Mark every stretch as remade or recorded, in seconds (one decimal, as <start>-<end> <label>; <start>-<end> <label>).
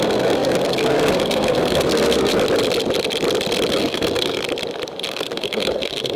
0.0-2.3 remade; 2.3-3.7 recorded; 3.7-4.4 remade; 4.4-5.1 recorded; 5.1-6.2 remade